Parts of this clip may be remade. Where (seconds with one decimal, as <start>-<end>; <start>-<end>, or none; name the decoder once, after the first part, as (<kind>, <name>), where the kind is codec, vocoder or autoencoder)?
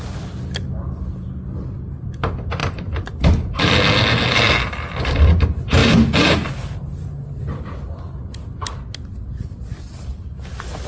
2.6-3.2 (vocoder, BigVGAN v2)